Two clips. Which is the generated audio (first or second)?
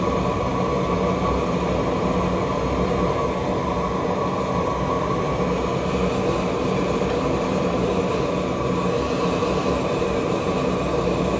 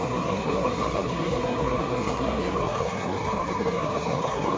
second